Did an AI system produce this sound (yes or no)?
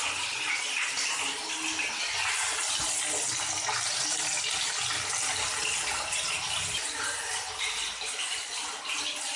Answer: no